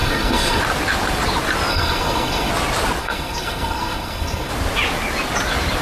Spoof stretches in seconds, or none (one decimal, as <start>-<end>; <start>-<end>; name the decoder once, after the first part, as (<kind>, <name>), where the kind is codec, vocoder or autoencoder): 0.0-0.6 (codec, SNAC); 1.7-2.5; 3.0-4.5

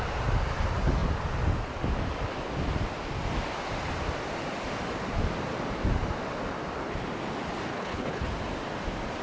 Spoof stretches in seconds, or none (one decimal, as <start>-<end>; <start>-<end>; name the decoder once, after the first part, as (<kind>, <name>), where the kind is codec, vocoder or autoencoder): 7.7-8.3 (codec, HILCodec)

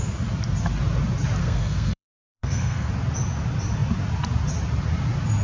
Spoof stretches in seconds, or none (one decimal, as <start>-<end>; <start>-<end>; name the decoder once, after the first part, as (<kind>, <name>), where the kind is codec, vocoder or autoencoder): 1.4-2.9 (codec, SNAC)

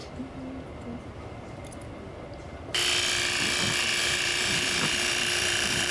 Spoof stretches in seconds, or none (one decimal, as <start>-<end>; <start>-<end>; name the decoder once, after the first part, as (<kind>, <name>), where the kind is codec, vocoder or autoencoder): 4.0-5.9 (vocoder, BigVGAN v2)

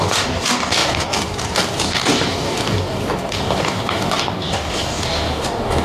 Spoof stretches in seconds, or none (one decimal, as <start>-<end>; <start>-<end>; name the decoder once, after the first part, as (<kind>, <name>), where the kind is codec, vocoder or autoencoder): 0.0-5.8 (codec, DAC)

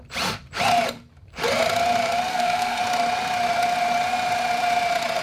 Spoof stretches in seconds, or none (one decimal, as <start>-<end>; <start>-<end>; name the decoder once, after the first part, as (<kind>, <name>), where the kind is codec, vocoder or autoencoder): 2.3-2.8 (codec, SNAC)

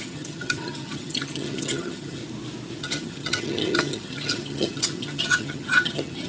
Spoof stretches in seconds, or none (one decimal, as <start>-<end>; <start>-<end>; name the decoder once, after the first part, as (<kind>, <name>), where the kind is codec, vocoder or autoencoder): 0.0-2.2 (vocoder, HiFi-GAN); 2.8-6.3

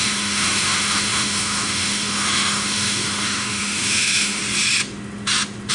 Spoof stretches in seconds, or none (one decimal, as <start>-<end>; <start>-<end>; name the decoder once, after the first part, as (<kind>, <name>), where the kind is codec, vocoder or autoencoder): 0.0-4.4 (autoencoder, DAC-VAE)